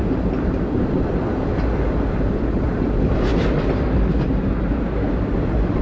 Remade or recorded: recorded